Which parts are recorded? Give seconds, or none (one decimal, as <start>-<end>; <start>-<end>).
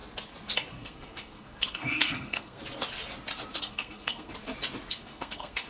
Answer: 0.0-0.7; 2.6-3.6; 4.3-4.9